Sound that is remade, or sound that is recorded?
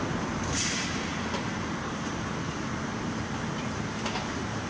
recorded